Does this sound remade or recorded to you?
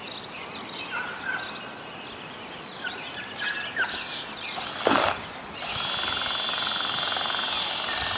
recorded